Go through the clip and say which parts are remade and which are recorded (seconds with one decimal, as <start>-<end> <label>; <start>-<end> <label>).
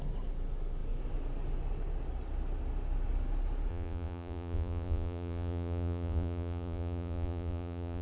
0.0-3.7 recorded; 3.7-8.0 remade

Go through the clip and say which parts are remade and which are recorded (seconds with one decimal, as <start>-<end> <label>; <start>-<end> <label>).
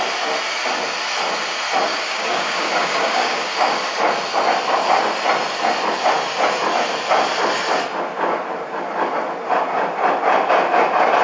0.0-1.9 recorded; 1.9-3.7 remade; 3.7-11.2 recorded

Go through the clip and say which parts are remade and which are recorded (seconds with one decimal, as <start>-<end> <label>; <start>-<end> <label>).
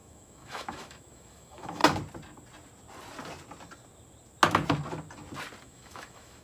0.0-1.8 remade; 1.8-5.6 recorded; 5.6-6.4 remade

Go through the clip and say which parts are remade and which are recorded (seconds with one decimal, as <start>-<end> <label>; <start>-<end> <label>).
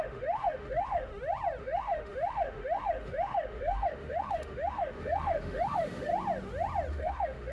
0.0-1.1 remade; 1.1-1.6 recorded; 1.6-6.1 remade; 6.1-6.9 recorded; 6.9-7.5 remade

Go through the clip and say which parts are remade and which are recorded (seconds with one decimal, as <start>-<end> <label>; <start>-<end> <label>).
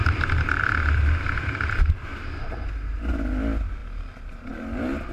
0.0-0.6 remade; 0.6-5.1 recorded